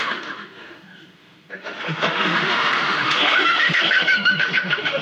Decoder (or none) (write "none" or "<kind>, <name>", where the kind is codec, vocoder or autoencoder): autoencoder, DAC-VAE